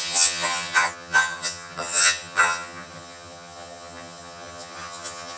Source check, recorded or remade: remade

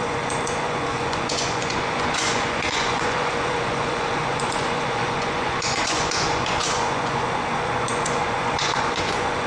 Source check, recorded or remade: remade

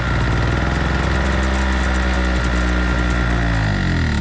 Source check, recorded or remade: recorded